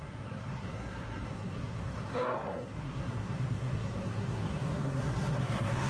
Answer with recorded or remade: remade